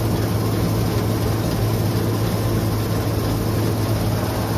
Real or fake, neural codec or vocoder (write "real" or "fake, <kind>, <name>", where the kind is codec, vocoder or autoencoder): real